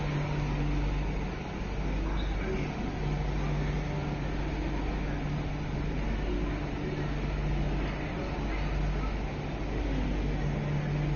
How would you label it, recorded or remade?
recorded